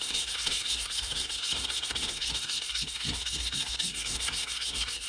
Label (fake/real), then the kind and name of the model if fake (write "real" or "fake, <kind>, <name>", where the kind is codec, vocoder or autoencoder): fake, codec, SNAC